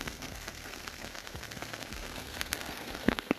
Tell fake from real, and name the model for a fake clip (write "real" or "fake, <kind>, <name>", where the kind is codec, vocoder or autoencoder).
fake, codec, SNAC